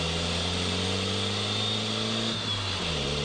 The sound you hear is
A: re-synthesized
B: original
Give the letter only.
B